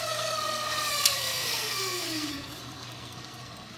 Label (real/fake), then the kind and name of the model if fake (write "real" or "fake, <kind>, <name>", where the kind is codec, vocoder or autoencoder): fake, codec, SNAC